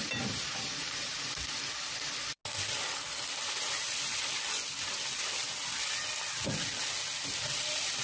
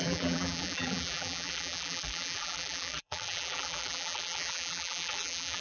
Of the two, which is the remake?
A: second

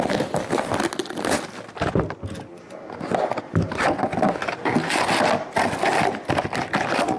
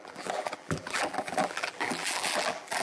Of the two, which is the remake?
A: second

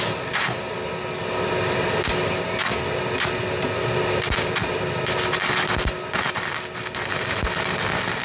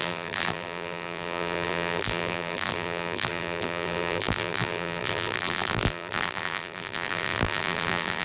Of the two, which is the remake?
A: second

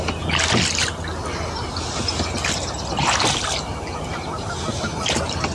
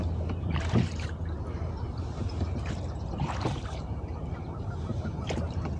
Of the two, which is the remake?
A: second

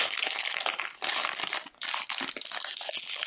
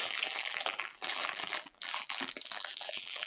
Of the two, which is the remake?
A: second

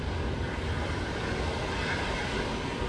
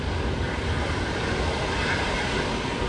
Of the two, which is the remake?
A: second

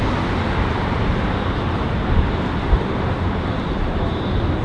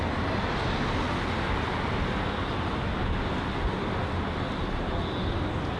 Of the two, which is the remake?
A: first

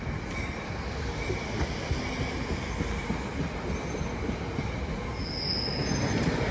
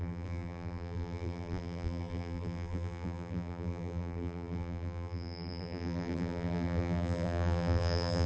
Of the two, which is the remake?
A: second